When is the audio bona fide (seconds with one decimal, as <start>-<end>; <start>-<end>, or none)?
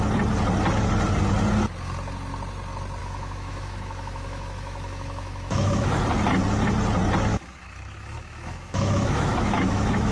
0.0-3.0; 5.9-7.3